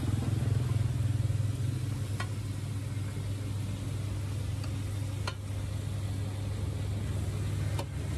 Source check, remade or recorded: recorded